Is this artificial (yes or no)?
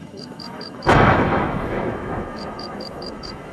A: yes